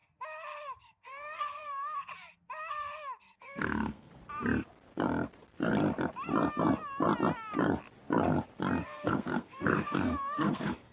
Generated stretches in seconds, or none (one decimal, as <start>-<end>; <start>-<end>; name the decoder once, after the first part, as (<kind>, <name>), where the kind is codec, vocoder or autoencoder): 0.8-2.1 (codec, SNAC); 3.2-4.1; 8.8-10.9